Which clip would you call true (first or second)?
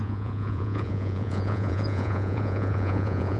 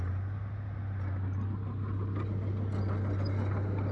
second